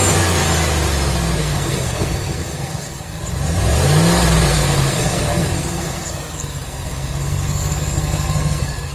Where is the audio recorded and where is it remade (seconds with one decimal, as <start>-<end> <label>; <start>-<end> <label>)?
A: 0.0-1.4 recorded; 1.4-3.2 remade; 3.2-4.5 recorded; 4.5-8.9 remade